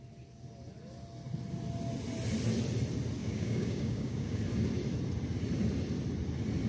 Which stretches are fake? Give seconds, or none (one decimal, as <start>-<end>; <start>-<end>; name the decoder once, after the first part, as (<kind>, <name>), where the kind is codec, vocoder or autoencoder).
3.2-4.4 (codec, DAC)